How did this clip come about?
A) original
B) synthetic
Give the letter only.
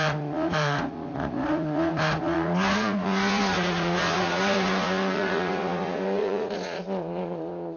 B